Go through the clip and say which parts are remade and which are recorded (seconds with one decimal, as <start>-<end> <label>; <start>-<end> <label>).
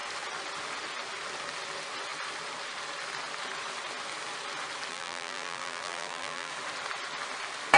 0.0-4.9 recorded; 4.9-6.5 remade; 6.5-7.8 recorded